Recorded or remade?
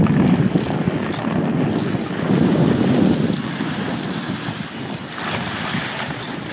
recorded